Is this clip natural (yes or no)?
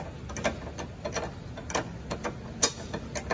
yes